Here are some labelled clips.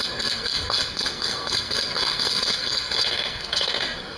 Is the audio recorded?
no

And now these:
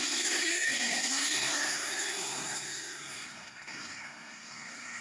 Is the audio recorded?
no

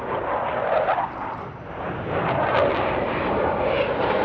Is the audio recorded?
yes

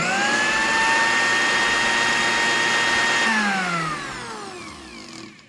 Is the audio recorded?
yes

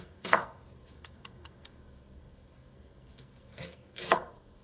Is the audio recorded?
no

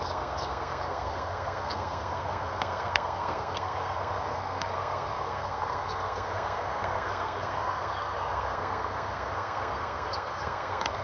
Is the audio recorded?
no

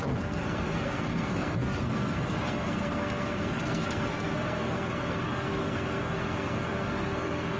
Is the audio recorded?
no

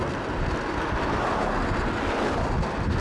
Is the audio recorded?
yes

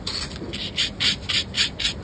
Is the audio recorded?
yes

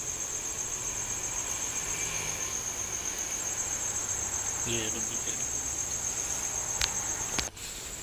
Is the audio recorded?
yes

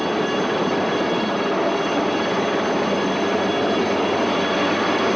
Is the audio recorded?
yes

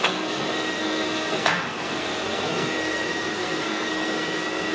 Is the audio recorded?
no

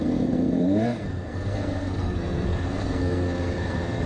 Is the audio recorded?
no